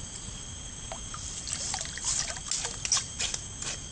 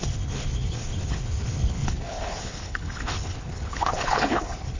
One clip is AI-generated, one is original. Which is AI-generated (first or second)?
second